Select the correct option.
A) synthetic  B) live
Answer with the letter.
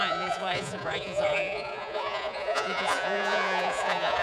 A